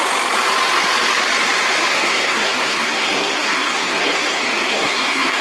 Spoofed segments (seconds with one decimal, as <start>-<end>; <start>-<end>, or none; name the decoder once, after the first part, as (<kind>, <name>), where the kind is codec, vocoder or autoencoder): 1.9-5.4 (codec, SNAC)